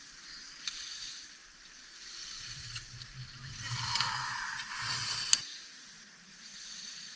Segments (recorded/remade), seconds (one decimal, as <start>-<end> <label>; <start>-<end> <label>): 0.0-1.4 recorded; 1.4-5.0 remade; 5.0-5.5 recorded; 5.5-6.2 remade; 6.2-7.2 recorded